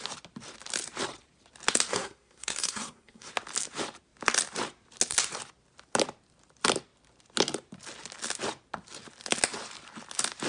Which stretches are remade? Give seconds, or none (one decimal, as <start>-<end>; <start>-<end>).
1.9-3.3